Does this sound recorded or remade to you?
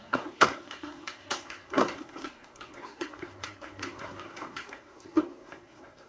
remade